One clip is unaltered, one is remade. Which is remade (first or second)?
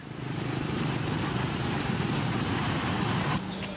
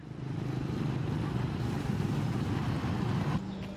first